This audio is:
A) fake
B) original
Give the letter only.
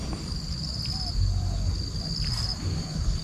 B